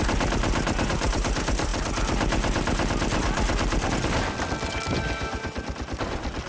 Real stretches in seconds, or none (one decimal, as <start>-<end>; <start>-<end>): 0.0-6.5